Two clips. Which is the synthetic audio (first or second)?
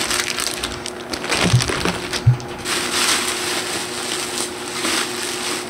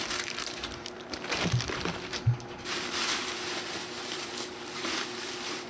second